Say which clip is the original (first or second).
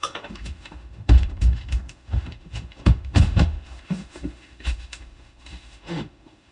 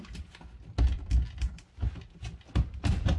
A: second